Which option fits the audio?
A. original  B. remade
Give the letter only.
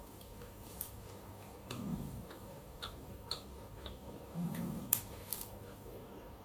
B